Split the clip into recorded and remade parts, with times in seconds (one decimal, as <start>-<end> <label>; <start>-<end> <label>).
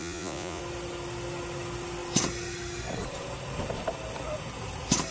0.0-0.6 remade; 0.6-5.1 recorded